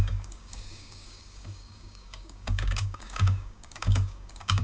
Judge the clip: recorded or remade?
remade